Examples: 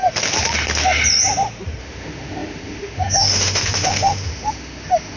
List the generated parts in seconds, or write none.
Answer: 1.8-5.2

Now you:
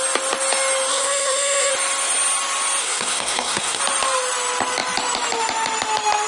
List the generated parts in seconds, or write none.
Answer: 0.9-1.7; 2.8-3.8